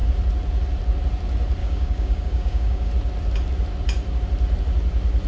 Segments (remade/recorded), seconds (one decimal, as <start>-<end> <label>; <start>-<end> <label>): 0.0-1.6 recorded; 1.6-2.9 remade; 2.9-5.3 recorded